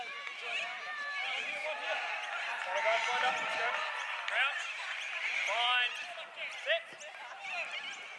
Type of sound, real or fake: real